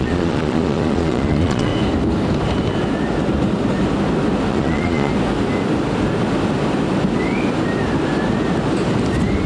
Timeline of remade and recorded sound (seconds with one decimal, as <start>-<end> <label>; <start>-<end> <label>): 0.0-1.7 remade; 1.7-4.5 recorded; 4.5-5.1 remade; 5.1-9.5 recorded